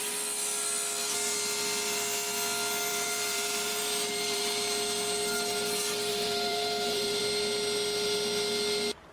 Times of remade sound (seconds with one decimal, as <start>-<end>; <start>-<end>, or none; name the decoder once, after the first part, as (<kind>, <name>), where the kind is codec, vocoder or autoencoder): 2.9-4.4 (vocoder, BigVGAN v2); 6.1-7.2